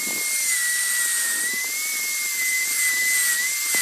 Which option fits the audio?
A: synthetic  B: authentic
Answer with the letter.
B